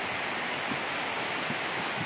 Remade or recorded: recorded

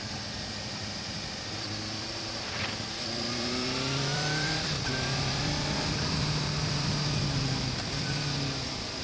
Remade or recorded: remade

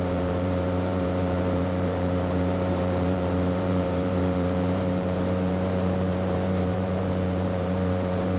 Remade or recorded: remade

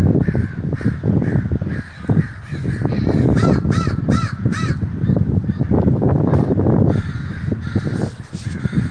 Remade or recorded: recorded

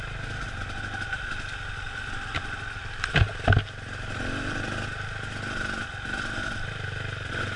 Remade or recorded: recorded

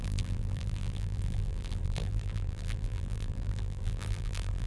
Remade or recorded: remade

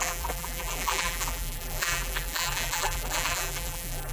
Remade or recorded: remade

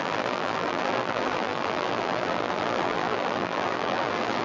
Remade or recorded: remade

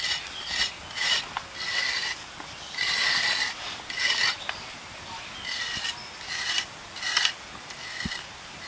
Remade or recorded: remade